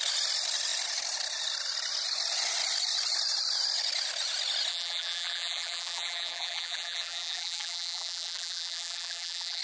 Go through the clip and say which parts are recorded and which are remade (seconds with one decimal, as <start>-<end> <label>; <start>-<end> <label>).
0.0-4.7 recorded; 4.7-9.6 remade

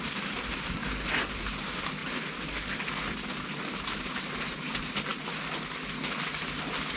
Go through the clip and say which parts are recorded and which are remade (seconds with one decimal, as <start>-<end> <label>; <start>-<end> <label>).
0.0-0.8 remade; 0.8-1.3 recorded; 1.3-2.0 remade; 2.0-3.6 recorded; 3.6-5.1 remade; 5.1-6.4 recorded; 6.4-7.0 remade

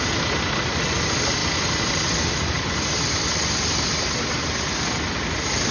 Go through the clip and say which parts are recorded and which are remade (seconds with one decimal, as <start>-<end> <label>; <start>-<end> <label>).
0.0-5.7 recorded

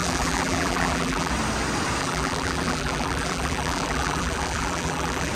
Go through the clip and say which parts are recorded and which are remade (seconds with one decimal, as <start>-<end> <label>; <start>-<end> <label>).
0.0-1.3 remade; 1.3-2.0 recorded; 2.0-5.3 remade

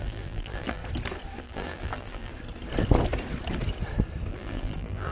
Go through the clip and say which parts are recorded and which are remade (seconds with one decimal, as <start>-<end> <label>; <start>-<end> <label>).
0.0-0.8 remade; 0.8-1.4 recorded; 1.4-2.3 remade; 2.3-4.3 recorded; 4.3-5.1 remade

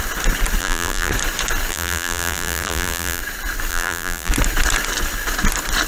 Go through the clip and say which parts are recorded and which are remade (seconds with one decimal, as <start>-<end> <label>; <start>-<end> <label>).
0.0-0.6 recorded; 0.6-1.1 remade; 1.1-1.7 recorded; 1.7-3.2 remade; 3.2-3.7 recorded; 3.7-4.3 remade; 4.3-5.9 recorded